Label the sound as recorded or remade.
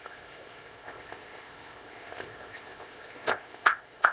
remade